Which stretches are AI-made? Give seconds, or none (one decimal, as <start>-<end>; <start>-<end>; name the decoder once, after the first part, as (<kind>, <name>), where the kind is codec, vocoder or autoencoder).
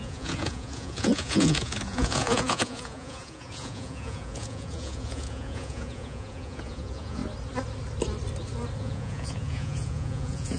0.0-7.2 (vocoder, Vocos); 8.8-10.6